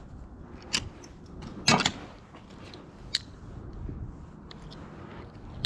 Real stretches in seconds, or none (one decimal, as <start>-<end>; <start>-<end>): 0.0-5.7